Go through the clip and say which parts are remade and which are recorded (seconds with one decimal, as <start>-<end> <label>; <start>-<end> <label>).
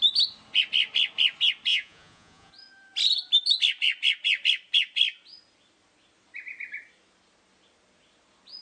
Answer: 0.0-1.7 recorded; 1.7-2.5 remade; 2.5-8.6 recorded